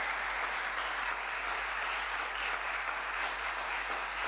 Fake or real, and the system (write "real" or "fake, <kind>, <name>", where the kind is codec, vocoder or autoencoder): real